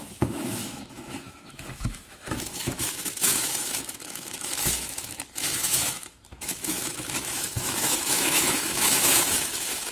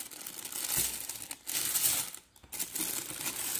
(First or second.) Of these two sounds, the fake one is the first